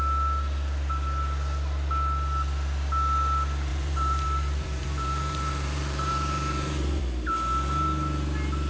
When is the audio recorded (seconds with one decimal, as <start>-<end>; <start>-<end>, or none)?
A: 0.0-3.7; 7.0-8.7